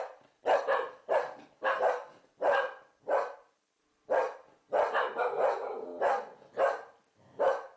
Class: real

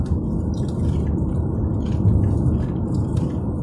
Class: real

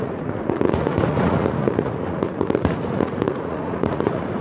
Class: fake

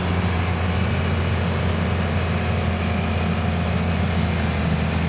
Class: real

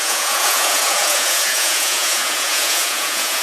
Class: fake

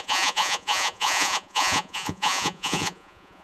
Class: fake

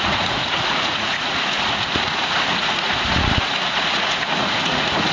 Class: fake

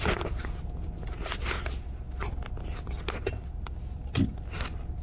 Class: real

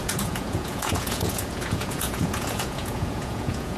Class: fake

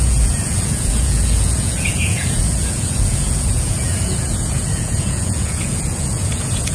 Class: fake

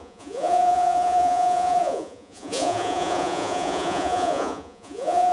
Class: fake